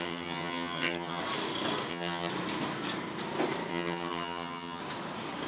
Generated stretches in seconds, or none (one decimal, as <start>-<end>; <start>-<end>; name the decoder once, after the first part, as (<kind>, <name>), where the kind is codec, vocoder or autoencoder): 0.0-1.2 (vocoder, HiFi-GAN); 1.9-2.3; 3.7-4.8

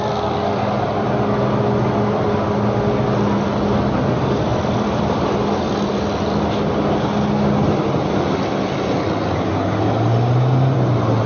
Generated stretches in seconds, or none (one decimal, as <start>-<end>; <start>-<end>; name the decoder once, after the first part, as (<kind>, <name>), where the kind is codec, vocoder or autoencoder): none

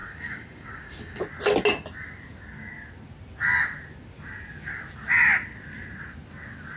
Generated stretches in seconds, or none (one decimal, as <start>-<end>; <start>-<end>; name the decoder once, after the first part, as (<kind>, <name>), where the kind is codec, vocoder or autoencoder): 0.0-1.2 (codec, DAC)

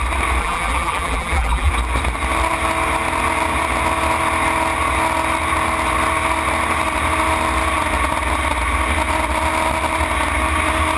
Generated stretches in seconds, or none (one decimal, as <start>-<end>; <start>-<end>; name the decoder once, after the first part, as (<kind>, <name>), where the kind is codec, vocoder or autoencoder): 0.4-1.7 (vocoder, BigVGAN v2)